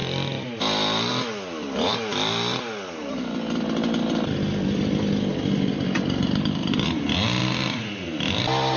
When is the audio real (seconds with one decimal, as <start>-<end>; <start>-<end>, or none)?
0.0-3.1